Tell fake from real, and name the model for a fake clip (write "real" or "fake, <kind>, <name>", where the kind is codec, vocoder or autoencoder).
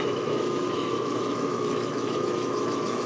fake, autoencoder, DAC-VAE